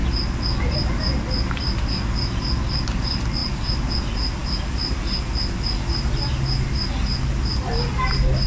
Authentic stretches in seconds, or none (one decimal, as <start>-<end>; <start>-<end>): 0.0-8.5